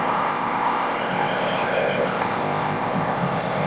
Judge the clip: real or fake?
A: fake